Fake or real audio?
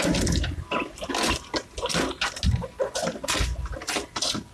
real